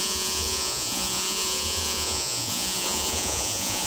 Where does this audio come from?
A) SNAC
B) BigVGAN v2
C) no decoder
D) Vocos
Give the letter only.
D